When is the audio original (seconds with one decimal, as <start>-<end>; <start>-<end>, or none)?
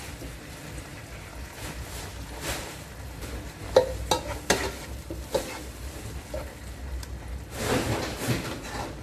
0.0-9.0